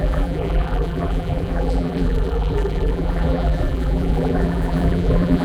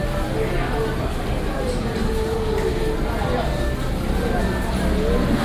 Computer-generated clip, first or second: first